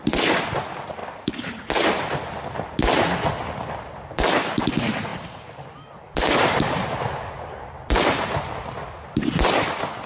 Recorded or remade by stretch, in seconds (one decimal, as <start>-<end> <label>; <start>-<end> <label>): 0.0-1.0 recorded; 1.0-1.6 remade; 1.6-5.1 recorded; 5.1-7.3 remade; 7.3-10.1 recorded